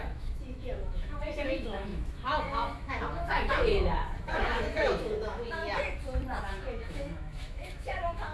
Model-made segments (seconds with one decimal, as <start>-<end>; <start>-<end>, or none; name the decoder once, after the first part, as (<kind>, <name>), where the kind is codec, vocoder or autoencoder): 0.0-5.6 (autoencoder, DAC-VAE); 6.4-8.3